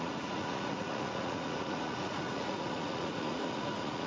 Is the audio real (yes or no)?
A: no